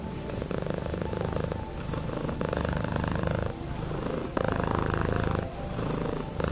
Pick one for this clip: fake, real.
fake